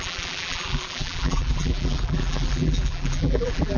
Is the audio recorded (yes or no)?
no